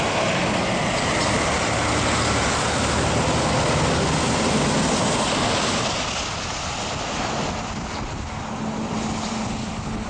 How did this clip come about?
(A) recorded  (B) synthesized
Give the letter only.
A